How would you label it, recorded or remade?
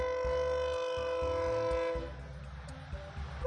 recorded